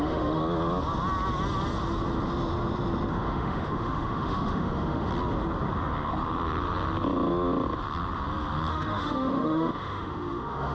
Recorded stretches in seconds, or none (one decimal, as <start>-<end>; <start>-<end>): 0.4-3.1; 5.1-8.7